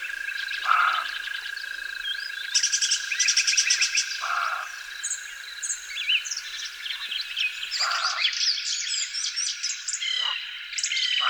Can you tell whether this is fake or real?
real